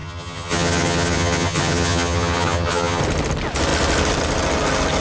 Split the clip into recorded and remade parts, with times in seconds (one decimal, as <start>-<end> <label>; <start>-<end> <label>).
0.0-3.0 remade; 3.0-5.0 recorded